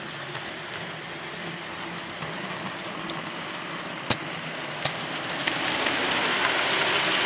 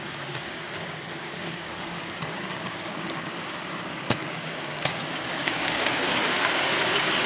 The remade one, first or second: second